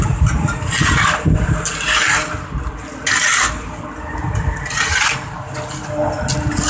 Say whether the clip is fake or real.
real